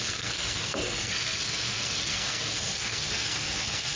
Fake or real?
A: fake